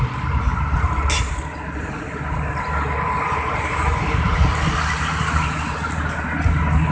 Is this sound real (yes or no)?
yes